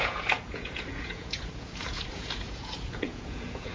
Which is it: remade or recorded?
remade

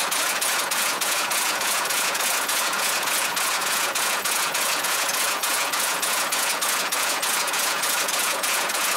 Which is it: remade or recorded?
remade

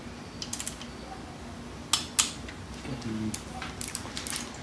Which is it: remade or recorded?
recorded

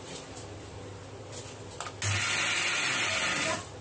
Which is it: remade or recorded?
recorded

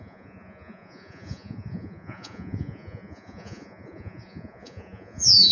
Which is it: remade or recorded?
remade